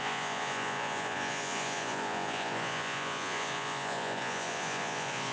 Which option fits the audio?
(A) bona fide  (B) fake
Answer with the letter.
B